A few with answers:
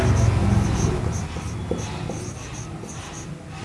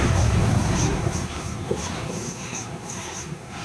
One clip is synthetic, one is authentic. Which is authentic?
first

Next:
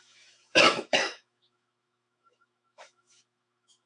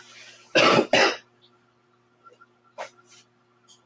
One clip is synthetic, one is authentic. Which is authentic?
second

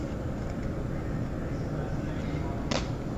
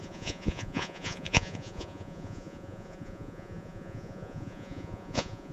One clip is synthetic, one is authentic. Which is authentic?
first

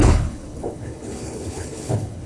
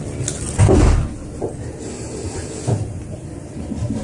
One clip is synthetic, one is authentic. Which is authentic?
second